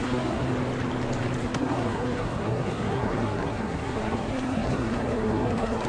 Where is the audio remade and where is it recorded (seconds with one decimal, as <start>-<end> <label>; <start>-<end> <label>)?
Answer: 0.0-0.5 remade; 0.5-1.4 recorded; 1.4-5.9 remade